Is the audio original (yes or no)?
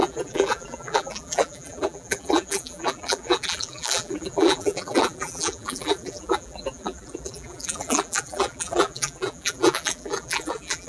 no